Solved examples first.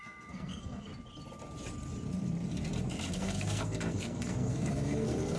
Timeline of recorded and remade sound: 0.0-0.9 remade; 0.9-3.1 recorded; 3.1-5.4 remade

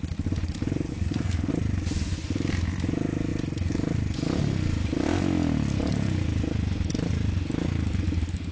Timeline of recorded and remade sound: 0.0-0.9 recorded; 0.9-1.5 remade; 1.5-8.5 recorded

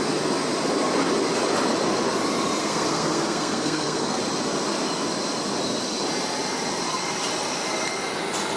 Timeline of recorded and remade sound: 0.0-2.6 recorded; 2.6-4.2 remade; 4.2-8.6 recorded

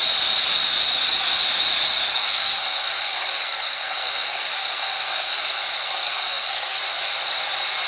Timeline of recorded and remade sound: 0.0-2.1 recorded; 2.1-6.8 remade; 6.8-7.9 recorded

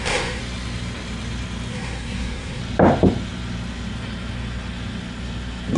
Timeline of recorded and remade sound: 0.0-0.4 remade; 0.4-1.7 recorded; 1.7-2.6 remade; 2.6-5.8 recorded

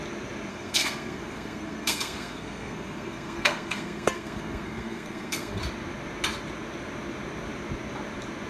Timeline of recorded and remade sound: 0.0-0.5 recorded; 0.5-5.6 remade; 5.6-8.5 recorded